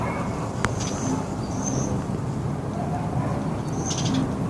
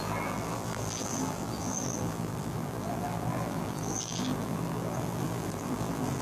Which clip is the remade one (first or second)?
second